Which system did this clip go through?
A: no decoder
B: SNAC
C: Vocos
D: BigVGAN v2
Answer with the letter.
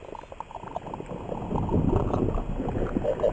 A